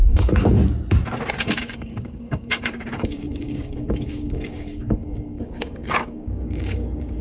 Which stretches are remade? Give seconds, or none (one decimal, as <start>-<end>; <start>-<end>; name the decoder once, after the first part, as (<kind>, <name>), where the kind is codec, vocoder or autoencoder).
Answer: 0.0-0.6 (codec, DAC); 1.4-7.2